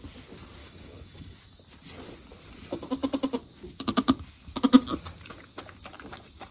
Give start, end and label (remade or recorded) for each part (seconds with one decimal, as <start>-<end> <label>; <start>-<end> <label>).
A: 0.0-0.6 recorded; 0.6-1.6 remade; 1.6-6.5 recorded